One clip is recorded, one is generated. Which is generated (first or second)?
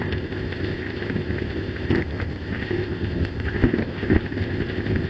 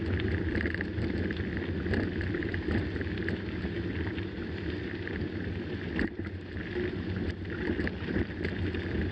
first